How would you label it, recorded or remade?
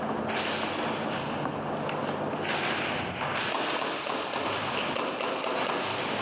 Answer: recorded